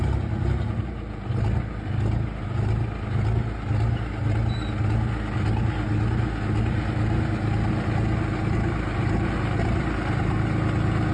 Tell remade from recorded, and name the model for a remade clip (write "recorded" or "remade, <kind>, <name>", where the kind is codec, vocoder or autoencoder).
recorded